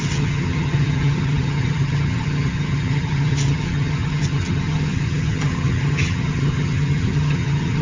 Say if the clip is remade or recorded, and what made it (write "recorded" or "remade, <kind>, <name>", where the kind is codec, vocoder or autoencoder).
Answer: remade, vocoder, HiFi-GAN